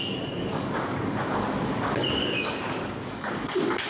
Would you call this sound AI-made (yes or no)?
yes